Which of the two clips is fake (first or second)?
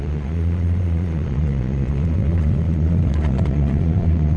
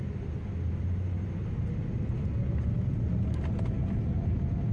first